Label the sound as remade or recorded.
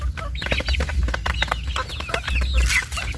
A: recorded